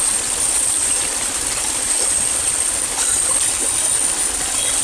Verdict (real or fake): real